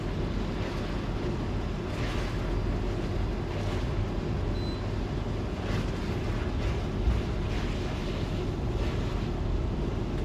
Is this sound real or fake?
real